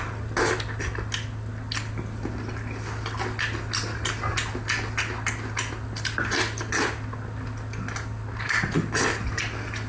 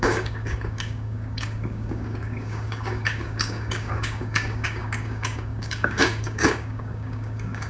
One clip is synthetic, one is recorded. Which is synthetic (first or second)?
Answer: second